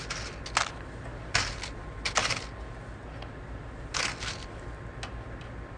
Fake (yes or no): no